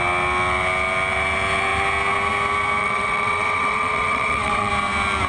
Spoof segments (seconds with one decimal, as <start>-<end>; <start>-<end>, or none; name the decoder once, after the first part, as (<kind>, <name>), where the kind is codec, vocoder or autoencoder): 2.8-4.7 (vocoder, WaveNeXt)